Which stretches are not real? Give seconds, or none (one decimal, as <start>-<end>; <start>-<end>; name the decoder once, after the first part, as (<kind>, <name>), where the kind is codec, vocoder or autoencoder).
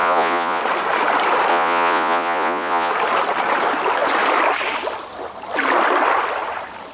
0.0-0.6 (vocoder, Vocos); 1.5-2.9